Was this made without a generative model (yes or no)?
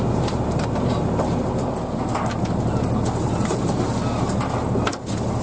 yes